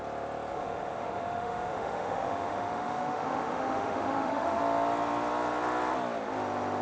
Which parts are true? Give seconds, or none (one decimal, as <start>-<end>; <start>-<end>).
0.0-0.5; 4.6-6.8